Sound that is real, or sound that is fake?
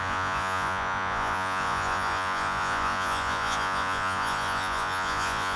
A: fake